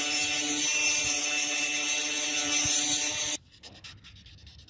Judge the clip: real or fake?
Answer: real